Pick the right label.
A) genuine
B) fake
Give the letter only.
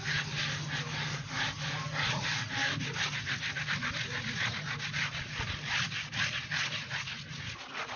A